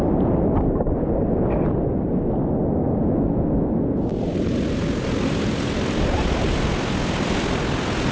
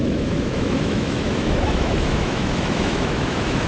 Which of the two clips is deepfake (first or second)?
second